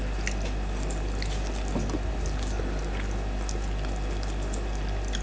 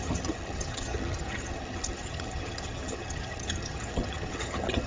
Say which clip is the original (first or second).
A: first